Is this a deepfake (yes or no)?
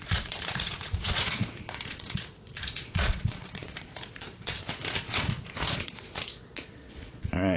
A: yes